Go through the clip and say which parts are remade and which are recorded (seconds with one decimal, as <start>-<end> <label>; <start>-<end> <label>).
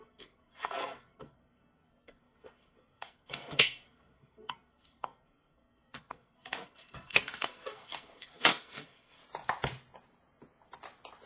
0.0-9.2 remade; 9.2-11.3 recorded